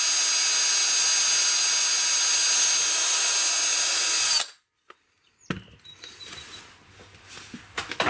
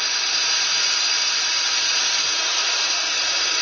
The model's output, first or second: second